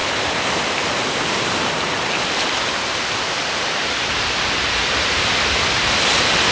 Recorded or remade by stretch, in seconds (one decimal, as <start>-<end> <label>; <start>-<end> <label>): 0.0-6.5 recorded